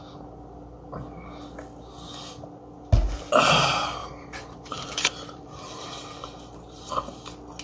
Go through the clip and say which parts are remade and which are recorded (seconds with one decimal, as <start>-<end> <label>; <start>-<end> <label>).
0.0-4.0 recorded; 4.0-6.9 remade; 6.9-7.6 recorded

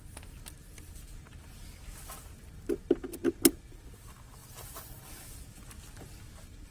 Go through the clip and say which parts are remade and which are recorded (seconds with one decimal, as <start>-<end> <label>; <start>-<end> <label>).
0.0-4.4 recorded; 4.4-5.0 remade; 5.0-6.7 recorded

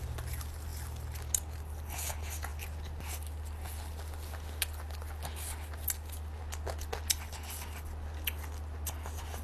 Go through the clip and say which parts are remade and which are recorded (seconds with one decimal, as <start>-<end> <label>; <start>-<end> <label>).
0.0-9.4 recorded

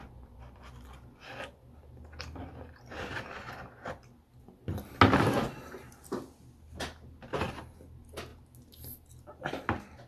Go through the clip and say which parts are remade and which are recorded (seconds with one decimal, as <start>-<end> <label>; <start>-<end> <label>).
0.0-10.1 recorded

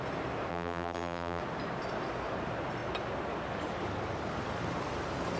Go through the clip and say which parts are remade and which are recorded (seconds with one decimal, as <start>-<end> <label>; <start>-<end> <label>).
0.0-0.5 recorded; 0.5-1.4 remade; 1.4-5.4 recorded

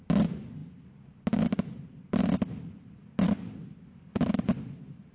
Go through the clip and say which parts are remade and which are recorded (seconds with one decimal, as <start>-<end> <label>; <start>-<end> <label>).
0.0-5.1 recorded